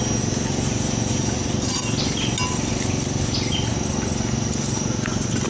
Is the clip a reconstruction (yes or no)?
no